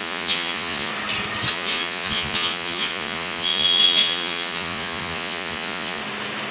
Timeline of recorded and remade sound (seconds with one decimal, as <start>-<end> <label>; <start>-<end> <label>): 0.0-0.9 remade; 0.9-1.5 recorded; 1.5-6.0 remade; 6.0-6.5 recorded